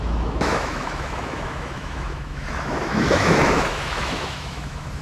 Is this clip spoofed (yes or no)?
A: yes